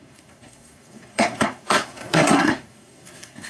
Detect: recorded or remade remade